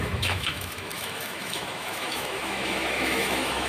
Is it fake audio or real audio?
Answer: fake